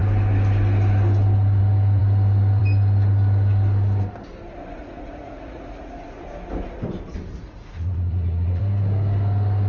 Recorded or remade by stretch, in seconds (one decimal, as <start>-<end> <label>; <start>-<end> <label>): 0.0-4.8 recorded; 4.8-5.9 remade; 5.9-7.3 recorded; 7.3-8.6 remade; 8.6-9.7 recorded